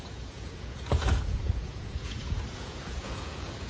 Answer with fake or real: fake